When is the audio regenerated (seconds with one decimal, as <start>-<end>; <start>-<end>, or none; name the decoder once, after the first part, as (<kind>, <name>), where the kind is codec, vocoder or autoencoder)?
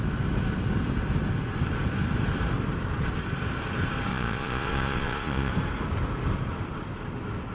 4.1-5.5 (vocoder, Vocos)